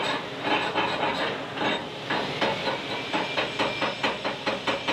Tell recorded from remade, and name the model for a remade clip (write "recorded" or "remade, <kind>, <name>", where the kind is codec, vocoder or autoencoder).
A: recorded